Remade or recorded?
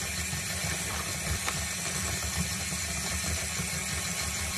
remade